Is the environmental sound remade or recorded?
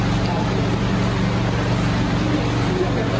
recorded